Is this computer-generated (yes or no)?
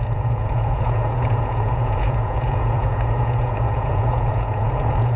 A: yes